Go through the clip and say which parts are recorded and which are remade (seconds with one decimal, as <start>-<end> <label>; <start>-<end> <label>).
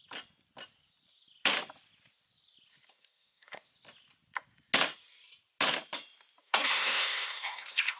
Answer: 0.0-2.9 recorded; 2.9-3.7 remade; 3.7-6.4 recorded; 6.4-8.0 remade